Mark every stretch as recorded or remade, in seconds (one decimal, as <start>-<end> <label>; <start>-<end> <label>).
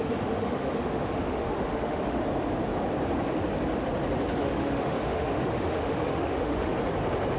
0.0-2.2 remade; 2.2-4.4 recorded; 4.4-6.7 remade; 6.7-7.4 recorded